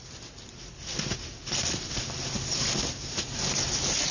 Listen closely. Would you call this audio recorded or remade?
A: recorded